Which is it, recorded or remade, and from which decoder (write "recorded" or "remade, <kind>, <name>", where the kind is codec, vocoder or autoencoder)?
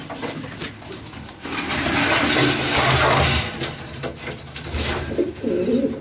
recorded